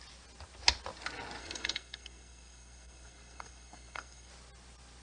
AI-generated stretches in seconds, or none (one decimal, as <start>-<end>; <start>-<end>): 1.4-4.3